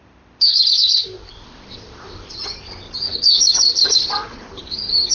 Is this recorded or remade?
recorded